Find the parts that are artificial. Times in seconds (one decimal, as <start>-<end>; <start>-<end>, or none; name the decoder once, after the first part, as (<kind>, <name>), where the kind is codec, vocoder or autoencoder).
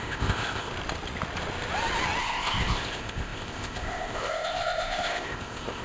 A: 0.0-0.7 (codec, ZipCodec); 2.2-5.8